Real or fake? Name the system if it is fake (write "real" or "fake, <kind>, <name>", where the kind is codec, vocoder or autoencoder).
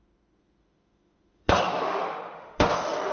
fake, autoencoder, DAC-VAE